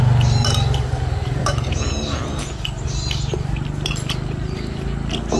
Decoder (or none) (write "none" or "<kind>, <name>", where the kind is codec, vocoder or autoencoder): none